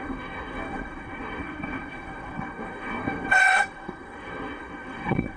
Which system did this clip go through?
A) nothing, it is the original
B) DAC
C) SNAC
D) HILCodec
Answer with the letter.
C